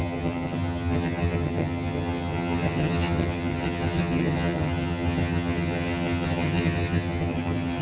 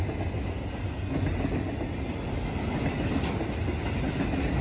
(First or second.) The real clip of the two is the second